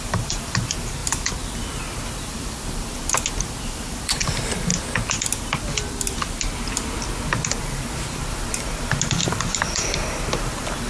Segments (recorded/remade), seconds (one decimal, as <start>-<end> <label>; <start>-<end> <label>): 0.0-1.0 remade; 1.0-2.1 recorded; 2.1-4.7 remade; 4.7-7.6 recorded; 7.6-10.9 remade